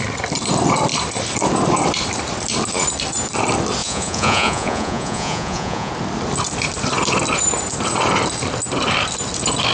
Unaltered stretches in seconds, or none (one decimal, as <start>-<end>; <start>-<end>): 0.0-3.8; 5.9-9.7